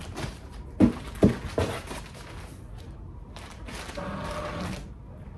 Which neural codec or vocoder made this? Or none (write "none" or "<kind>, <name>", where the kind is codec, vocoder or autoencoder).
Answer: none